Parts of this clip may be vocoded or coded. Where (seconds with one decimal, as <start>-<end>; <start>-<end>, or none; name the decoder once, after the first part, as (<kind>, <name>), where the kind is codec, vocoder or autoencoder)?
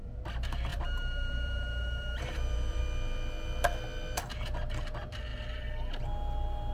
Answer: 0.7-2.8 (vocoder, BigVGAN v2)